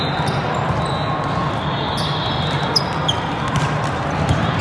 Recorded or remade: recorded